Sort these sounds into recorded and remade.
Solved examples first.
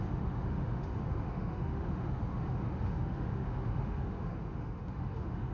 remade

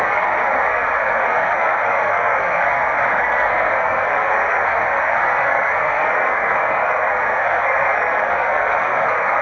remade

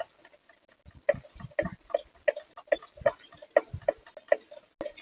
recorded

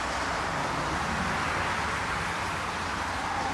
recorded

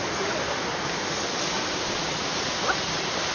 recorded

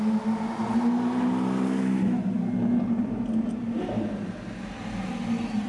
recorded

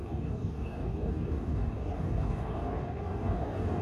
remade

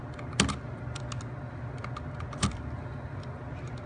recorded